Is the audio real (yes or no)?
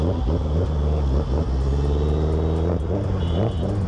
yes